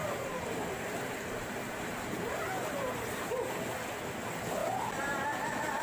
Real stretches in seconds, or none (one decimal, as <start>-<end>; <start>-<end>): 3.5-5.8